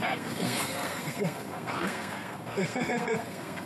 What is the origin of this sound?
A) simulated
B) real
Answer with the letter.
A